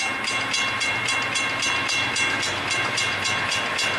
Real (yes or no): yes